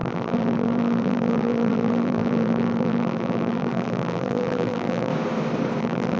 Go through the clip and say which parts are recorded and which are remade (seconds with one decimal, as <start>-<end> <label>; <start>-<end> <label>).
0.0-5.1 remade; 5.1-5.8 recorded; 5.8-6.2 remade